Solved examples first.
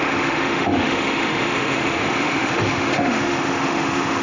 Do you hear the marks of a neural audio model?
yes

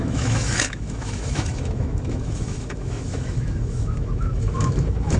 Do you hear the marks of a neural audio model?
yes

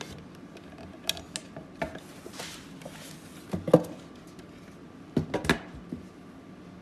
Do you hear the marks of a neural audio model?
no